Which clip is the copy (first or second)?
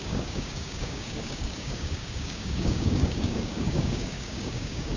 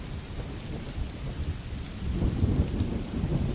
first